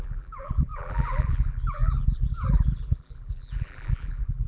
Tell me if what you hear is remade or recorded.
remade